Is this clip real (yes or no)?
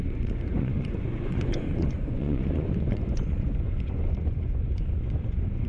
no